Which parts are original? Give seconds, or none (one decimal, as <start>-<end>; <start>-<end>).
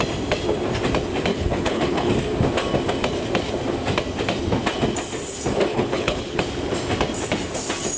0.0-1.3; 2.1-5.7; 6.4-8.0